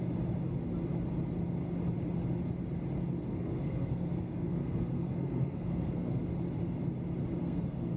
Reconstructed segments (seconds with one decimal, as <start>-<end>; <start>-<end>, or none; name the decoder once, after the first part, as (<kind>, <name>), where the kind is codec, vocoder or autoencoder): 3.3-6.2 (codec, SNAC); 7.4-8.0